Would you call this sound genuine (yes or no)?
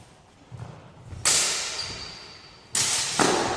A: yes